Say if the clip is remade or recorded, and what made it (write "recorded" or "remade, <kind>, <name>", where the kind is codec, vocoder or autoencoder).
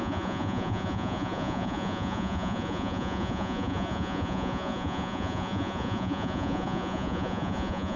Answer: remade, vocoder, Vocos